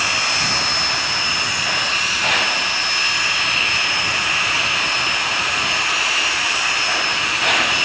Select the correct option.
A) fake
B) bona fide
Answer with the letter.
B